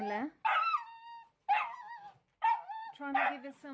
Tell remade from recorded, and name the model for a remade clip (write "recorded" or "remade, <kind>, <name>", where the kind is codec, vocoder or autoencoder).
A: recorded